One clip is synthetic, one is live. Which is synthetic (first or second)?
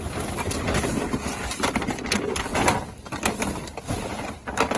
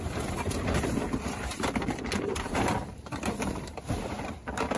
second